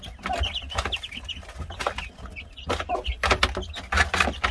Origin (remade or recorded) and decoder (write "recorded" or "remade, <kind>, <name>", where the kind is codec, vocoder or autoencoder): recorded